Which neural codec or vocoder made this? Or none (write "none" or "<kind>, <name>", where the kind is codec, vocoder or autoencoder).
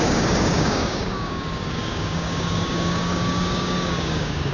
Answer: codec, DAC